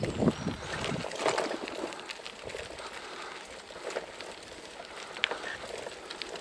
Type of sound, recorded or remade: recorded